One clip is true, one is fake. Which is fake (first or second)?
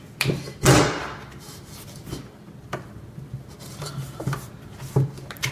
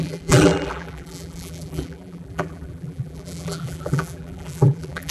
second